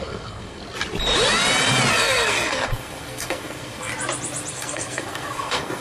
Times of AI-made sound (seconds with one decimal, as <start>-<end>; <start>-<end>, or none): 0.0-0.6; 1.9-3.9; 4.5-5.8